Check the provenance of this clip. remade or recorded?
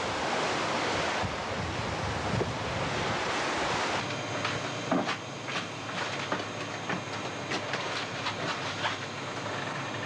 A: recorded